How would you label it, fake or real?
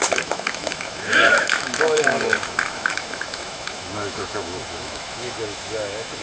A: fake